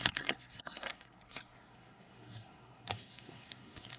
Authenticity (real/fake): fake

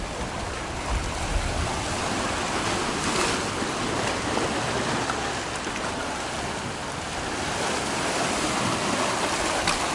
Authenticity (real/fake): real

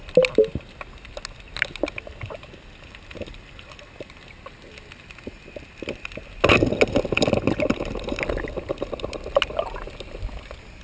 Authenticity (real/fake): real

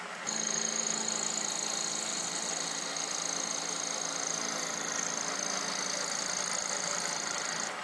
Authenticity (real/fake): real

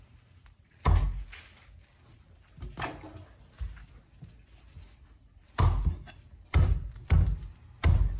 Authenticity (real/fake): real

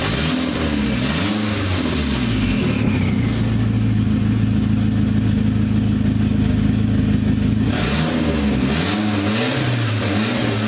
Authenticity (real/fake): real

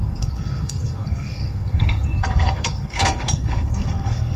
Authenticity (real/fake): fake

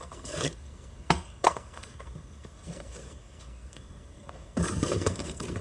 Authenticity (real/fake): fake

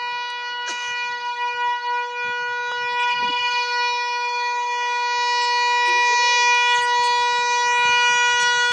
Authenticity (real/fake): real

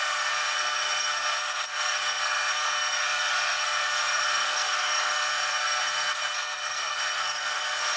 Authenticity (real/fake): fake